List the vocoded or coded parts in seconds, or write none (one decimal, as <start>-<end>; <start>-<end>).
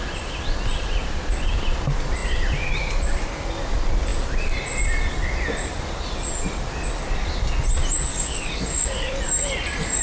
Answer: 8.1-9.1